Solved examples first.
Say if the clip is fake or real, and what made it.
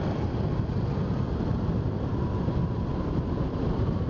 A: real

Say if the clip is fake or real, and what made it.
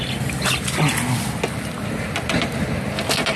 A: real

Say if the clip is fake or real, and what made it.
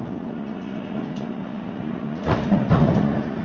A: fake, vocoder, Vocos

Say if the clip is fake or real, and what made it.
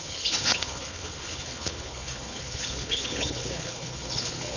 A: fake, codec, HILCodec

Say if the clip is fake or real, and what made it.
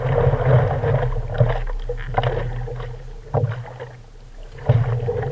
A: real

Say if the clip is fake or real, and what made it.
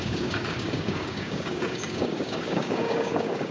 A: fake, codec, DAC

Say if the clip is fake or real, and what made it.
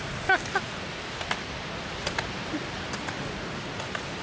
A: real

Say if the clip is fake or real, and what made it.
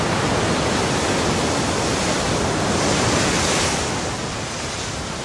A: real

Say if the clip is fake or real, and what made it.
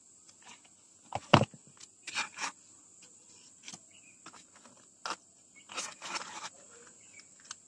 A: real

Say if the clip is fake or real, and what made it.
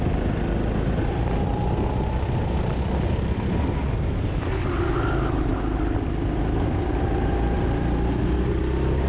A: real